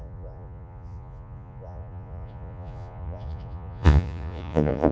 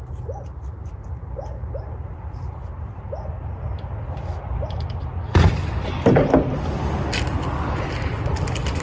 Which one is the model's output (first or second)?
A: first